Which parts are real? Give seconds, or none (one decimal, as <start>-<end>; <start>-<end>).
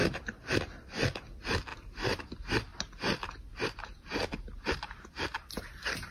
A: 0.6-1.7; 2.2-2.7; 5.1-6.1